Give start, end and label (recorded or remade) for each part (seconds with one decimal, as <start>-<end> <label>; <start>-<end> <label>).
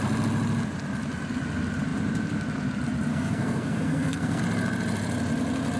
0.0-3.1 recorded; 3.1-4.4 remade; 4.4-5.8 recorded